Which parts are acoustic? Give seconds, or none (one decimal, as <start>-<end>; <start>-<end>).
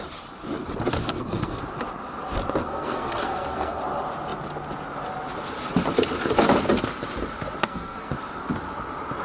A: 0.0-1.0; 1.6-2.6; 3.8-7.6; 8.1-9.2